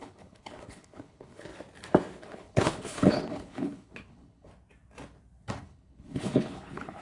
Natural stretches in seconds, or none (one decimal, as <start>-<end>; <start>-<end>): 1.5-2.2; 4.5-5.6